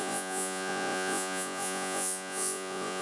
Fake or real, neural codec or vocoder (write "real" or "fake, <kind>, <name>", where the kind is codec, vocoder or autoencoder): fake, vocoder, Vocos